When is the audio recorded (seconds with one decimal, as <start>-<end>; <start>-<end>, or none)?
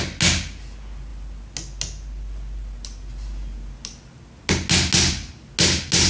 0.0-6.1